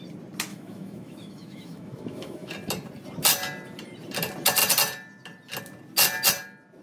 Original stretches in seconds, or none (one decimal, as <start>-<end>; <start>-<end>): 0.0-0.5; 2.5-6.8